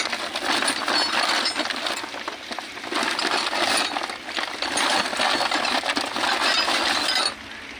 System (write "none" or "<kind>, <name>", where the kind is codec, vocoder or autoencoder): none